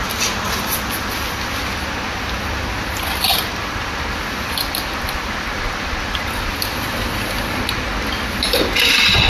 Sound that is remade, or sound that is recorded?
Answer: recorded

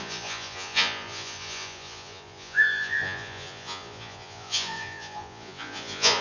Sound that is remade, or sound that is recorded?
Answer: remade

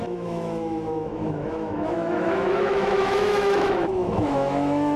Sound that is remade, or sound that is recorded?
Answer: remade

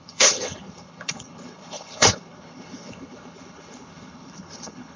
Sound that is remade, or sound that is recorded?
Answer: remade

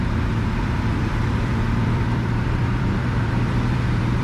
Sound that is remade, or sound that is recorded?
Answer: remade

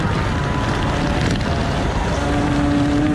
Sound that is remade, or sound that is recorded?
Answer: recorded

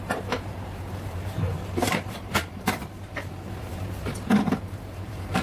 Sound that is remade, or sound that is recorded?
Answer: remade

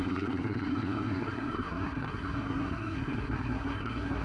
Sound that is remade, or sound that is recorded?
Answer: remade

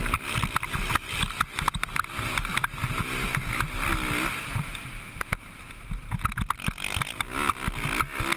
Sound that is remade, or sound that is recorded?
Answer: recorded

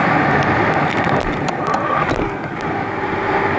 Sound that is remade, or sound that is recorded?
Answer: recorded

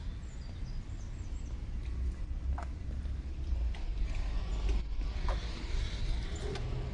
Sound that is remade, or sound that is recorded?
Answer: recorded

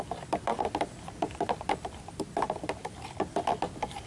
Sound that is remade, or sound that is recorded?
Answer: recorded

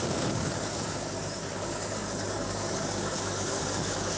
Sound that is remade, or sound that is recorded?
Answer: remade